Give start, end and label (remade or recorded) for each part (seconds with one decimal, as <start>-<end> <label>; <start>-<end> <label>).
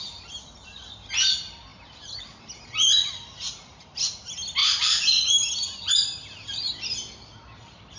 0.0-1.7 recorded; 1.7-2.5 remade; 2.5-4.6 recorded; 4.6-5.2 remade; 5.2-8.0 recorded